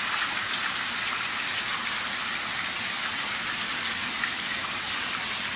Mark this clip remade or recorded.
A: recorded